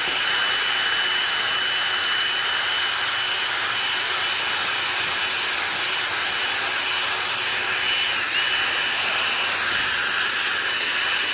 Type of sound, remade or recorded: recorded